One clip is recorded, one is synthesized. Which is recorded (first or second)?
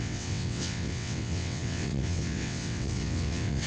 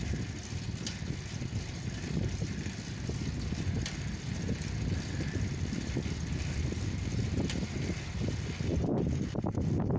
second